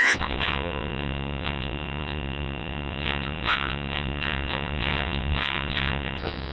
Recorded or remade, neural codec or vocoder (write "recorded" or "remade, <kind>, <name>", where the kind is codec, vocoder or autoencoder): remade, vocoder, WaveNeXt